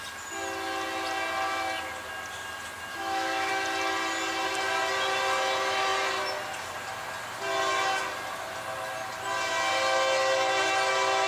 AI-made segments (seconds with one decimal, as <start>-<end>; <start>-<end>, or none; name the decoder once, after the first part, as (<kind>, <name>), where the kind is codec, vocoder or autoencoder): 2.9-3.5 (autoencoder, DAC-VAE)